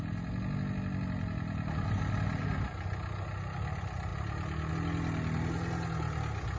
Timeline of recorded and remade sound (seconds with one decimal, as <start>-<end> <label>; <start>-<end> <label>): 0.0-6.6 recorded